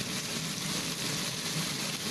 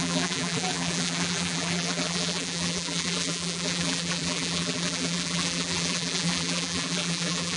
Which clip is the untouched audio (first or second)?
first